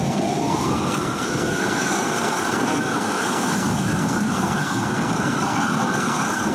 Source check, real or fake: fake